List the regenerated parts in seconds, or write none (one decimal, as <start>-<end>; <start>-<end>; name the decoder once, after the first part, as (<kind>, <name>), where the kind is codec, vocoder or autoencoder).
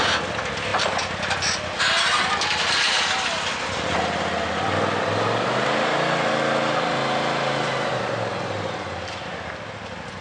none